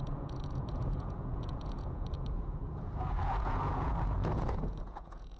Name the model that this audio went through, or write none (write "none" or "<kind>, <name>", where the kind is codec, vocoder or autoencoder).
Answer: vocoder, Vocos